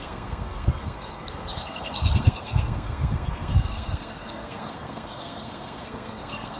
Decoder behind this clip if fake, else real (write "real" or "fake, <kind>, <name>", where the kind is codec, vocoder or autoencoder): fake, codec, SNAC